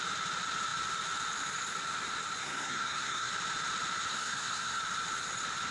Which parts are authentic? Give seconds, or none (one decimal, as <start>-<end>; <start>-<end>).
0.0-2.4; 3.3-4.1; 4.8-5.7